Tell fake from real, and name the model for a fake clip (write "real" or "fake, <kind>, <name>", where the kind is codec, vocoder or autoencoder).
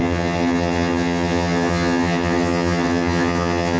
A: fake, vocoder, HiFi-GAN